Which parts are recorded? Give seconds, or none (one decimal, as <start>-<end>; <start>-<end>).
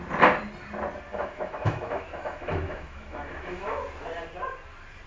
0.0-1.1; 3.8-5.1